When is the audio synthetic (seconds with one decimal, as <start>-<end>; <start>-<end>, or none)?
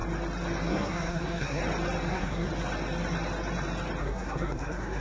0.7-1.6; 2.1-2.5; 4.0-5.0